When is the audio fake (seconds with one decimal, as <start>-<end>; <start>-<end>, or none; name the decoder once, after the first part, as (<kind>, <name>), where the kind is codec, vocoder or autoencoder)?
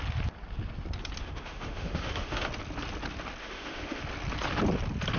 1.2-2.5 (autoencoder, DAC-VAE); 3.4-4.0